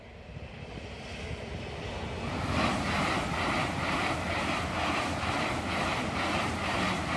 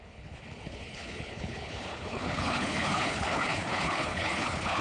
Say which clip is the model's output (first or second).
second